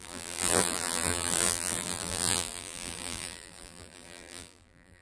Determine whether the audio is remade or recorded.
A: remade